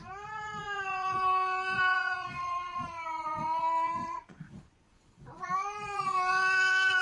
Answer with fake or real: fake